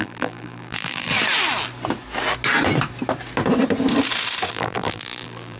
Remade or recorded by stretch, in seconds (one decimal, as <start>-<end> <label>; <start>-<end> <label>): 0.0-1.1 remade; 1.1-4.5 recorded; 4.5-5.6 remade